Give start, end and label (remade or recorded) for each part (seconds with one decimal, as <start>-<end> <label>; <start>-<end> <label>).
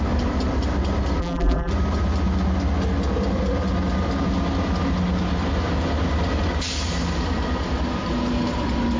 0.0-1.2 recorded; 1.2-1.7 remade; 1.7-9.0 recorded